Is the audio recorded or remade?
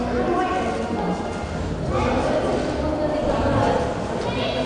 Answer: recorded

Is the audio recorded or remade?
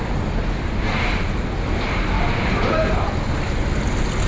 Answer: recorded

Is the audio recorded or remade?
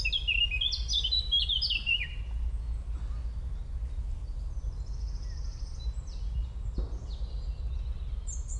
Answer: recorded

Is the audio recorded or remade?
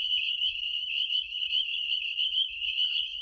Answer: remade